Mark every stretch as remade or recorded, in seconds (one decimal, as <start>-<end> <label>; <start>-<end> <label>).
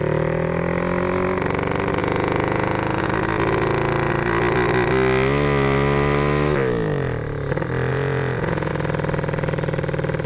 0.0-2.0 recorded; 2.0-3.1 remade; 3.1-7.9 recorded; 7.9-8.7 remade; 8.7-10.3 recorded